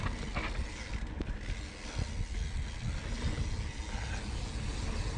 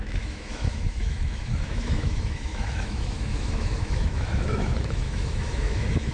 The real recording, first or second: first